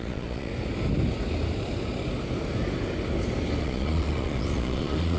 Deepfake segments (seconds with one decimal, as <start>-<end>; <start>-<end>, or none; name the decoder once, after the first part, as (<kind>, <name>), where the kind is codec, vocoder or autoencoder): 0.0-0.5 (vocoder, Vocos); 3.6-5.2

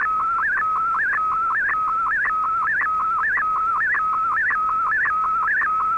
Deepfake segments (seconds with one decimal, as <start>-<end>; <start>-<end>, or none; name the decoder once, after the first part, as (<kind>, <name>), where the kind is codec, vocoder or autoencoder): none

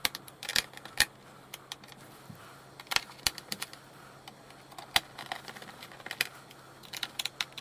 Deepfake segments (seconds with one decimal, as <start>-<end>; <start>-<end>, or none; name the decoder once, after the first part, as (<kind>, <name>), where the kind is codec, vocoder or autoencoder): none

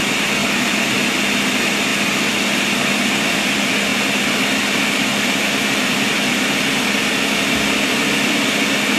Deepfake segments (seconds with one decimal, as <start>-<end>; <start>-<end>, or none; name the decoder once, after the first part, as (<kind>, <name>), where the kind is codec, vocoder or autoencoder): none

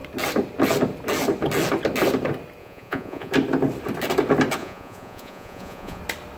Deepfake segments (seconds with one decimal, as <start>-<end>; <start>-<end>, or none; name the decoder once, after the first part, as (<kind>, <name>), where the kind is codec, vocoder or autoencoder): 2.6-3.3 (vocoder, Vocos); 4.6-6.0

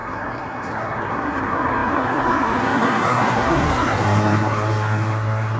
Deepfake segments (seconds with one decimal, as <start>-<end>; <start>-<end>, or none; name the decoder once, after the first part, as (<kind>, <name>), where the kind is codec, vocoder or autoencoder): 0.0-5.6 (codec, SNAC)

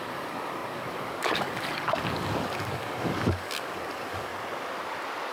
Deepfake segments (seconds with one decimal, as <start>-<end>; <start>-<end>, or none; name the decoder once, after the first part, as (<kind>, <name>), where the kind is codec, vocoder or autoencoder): 0.0-4.3 (codec, DAC)

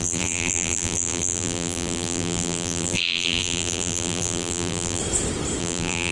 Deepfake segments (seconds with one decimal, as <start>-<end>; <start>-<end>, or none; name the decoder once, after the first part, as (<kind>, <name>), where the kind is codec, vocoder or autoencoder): 0.0-5.0 (vocoder, BigVGAN v2); 5.6-6.1